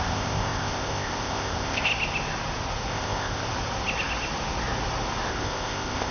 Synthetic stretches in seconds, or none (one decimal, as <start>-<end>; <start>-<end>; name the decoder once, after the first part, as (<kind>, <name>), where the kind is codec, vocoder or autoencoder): 0.0-1.9 (codec, ZipCodec); 2.9-3.4; 5.3-6.1

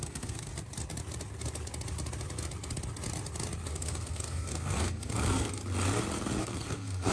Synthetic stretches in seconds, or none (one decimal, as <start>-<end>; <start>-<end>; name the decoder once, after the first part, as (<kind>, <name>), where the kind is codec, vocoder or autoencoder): 0.0-0.5 (codec, SNAC); 3.7-5.6; 6.4-7.1

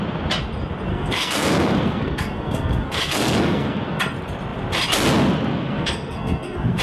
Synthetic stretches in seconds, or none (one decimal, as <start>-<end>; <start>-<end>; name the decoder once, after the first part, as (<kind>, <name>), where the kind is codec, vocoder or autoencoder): 0.9-4.0 (codec, SNAC); 5.5-6.8

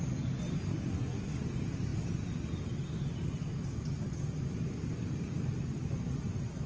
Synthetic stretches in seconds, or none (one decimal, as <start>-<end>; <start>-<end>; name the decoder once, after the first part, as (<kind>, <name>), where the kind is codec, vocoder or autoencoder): 0.7-1.4 (codec, SNAC)

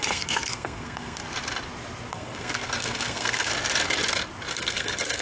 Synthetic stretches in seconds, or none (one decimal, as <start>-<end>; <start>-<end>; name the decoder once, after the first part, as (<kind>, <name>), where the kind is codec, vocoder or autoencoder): 0.0-1.2 (codec, SNAC); 2.1-3.5; 4.5-5.2

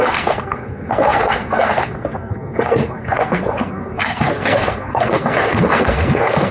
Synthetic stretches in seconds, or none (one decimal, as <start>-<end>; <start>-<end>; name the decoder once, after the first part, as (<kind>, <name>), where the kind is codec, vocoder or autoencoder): 0.0-6.5 (codec, SNAC)

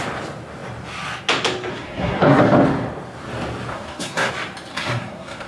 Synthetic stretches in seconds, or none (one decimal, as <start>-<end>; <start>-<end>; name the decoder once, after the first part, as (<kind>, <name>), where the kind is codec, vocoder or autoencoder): 1.7-2.4 (codec, SNAC); 3.7-4.3; 4.7-5.5

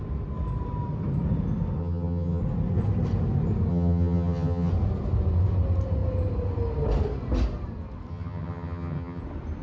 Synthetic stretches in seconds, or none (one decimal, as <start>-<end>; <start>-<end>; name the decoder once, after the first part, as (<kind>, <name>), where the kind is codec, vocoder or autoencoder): 1.8-2.4 (vocoder, HiFi-GAN); 3.7-4.7; 8.1-9.2